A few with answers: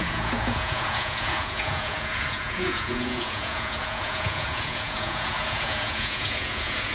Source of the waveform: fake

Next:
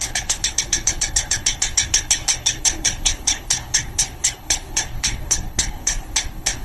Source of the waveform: fake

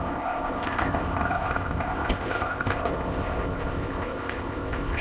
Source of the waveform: fake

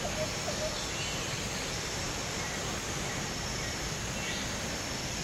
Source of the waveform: real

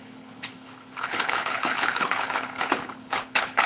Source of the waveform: fake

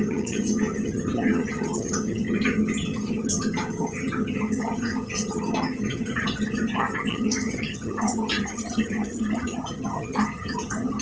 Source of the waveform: fake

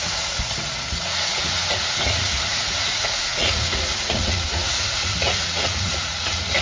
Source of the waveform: fake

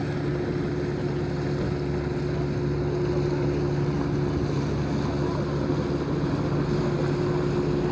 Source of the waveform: real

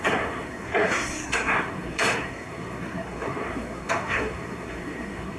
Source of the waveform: fake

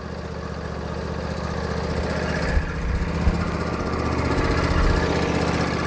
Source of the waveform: real